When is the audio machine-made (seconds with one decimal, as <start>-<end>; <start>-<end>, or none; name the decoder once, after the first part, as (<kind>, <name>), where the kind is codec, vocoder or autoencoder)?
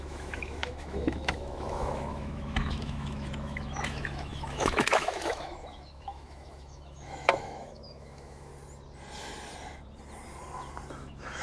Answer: 0.0-8.5 (autoencoder, DAC-VAE); 10.9-11.4